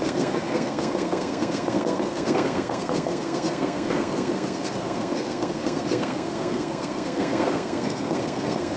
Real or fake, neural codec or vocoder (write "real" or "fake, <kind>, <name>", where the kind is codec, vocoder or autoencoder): fake, codec, SNAC